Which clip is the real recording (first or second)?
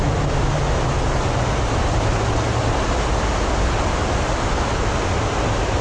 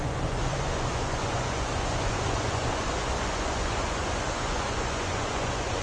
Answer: first